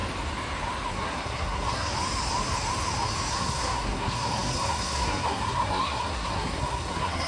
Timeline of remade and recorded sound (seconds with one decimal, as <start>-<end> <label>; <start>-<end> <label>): 0.0-0.9 recorded; 0.9-1.9 remade; 1.9-3.3 recorded; 3.3-7.3 remade

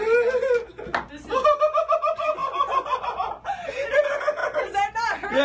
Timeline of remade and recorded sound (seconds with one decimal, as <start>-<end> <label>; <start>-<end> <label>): 0.0-5.4 recorded

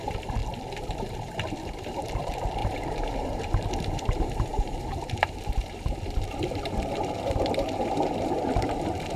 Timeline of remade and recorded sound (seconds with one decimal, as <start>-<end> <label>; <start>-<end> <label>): 0.0-0.4 remade; 0.4-0.9 recorded; 0.9-9.2 remade

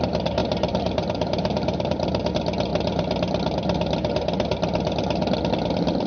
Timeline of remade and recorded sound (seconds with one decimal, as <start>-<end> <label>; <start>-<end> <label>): 0.0-0.4 recorded; 0.4-2.3 remade; 2.3-6.1 recorded

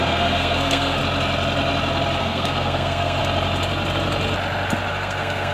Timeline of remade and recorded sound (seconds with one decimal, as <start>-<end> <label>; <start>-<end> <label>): 0.0-1.0 remade; 1.0-2.2 recorded; 2.2-3.2 remade; 3.2-4.9 recorded; 4.9-5.5 remade

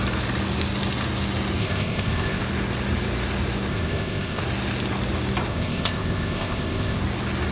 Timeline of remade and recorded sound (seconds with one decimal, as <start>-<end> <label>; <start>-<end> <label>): 0.0-1.6 recorded; 1.6-2.4 remade; 2.4-3.7 recorded; 3.7-4.4 remade; 4.4-5.5 recorded; 5.5-7.0 remade; 7.0-7.5 recorded